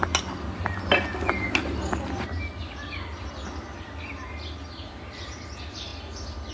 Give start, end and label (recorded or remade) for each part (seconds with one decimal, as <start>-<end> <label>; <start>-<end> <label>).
0.0-6.5 recorded